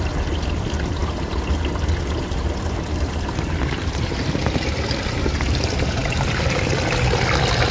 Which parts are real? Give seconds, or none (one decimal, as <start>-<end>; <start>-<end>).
1.0-4.2